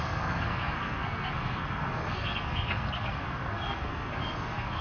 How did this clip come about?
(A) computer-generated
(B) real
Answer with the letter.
A